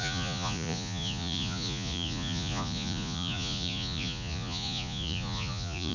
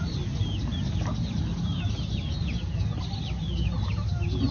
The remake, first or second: first